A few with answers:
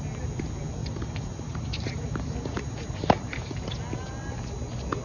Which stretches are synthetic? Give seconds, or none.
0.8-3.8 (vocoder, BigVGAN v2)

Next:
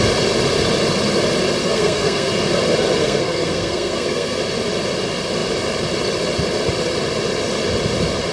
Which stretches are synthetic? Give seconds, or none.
1.6-2.3 (codec, SNAC); 3.0-4.4

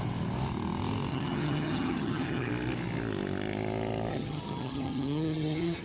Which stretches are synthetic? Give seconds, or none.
1.1-2.5 (vocoder, HiFi-GAN); 4.1-5.8

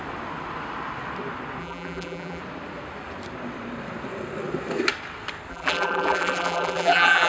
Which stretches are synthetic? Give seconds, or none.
1.6-2.4 (vocoder, BigVGAN v2); 5.5-7.3

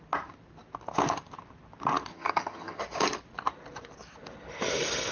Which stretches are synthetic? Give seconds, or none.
2.1-2.8 (vocoder, HiFi-GAN)

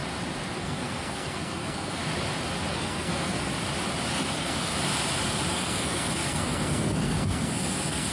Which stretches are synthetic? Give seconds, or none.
0.6-2.0 (codec, SNAC); 2.7-3.5; 4.1-4.7; 5.5-8.1